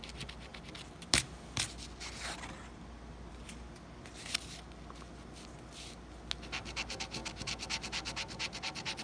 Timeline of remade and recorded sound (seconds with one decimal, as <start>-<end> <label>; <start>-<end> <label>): 0.0-9.0 recorded